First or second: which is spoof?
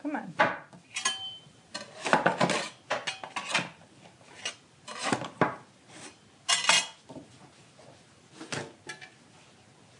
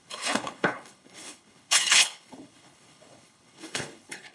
second